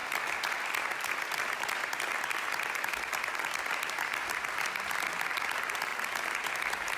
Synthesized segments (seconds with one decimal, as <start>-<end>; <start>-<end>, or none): none